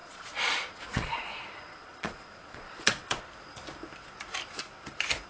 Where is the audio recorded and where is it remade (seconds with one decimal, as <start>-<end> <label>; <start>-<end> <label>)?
0.0-3.2 remade; 3.2-5.3 recorded